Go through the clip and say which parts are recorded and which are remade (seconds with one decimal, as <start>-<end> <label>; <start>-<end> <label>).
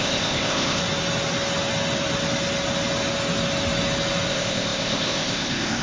0.0-0.8 remade; 0.8-4.3 recorded; 4.3-5.8 remade